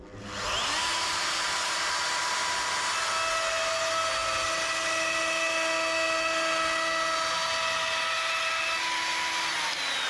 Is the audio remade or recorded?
recorded